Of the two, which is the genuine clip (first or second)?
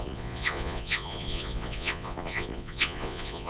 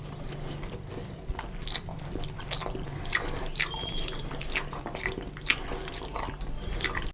second